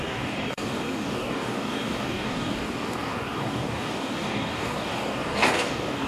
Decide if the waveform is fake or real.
fake